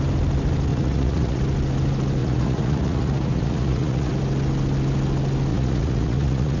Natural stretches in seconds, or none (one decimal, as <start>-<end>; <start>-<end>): 0.0-0.7; 1.4-2.2; 4.1-5.5

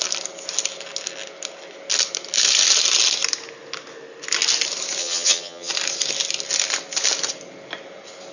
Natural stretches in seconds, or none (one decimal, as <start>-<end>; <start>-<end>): 0.0-5.0; 5.7-8.3

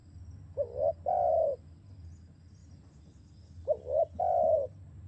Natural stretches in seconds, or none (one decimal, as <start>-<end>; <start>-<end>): 0.0-5.1

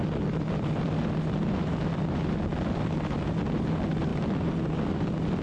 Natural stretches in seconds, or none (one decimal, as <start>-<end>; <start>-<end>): 0.0-5.4

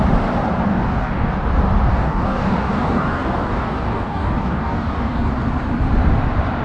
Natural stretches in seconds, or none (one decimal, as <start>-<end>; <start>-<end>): 0.0-0.7; 1.3-1.9; 5.3-6.6

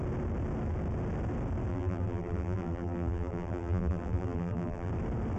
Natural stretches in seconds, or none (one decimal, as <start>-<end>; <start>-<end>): 0.0-1.7; 4.9-5.4

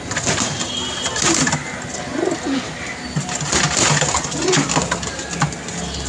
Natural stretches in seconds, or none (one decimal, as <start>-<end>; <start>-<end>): 0.0-6.1